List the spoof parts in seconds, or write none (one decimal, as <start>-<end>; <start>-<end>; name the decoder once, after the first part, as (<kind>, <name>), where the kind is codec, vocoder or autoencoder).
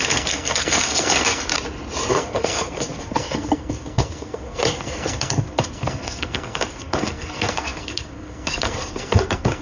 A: 0.0-1.5 (codec, SNAC); 2.1-9.6